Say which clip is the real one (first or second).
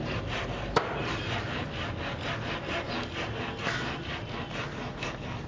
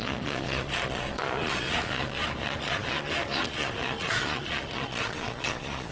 first